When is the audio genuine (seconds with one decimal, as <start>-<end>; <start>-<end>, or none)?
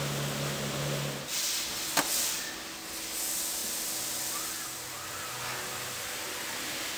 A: 0.0-7.0